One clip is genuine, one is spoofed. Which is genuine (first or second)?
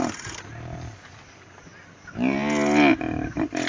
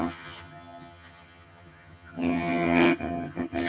first